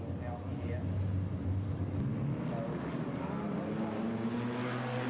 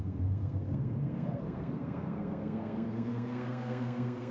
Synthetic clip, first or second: second